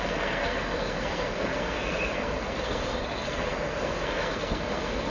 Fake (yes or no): yes